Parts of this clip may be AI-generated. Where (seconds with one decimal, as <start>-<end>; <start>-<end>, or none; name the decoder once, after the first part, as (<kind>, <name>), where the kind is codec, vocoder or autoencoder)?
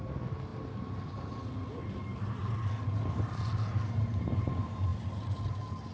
none